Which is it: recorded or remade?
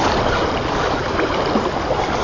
recorded